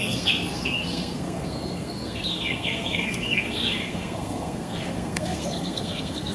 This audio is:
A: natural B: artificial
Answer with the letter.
B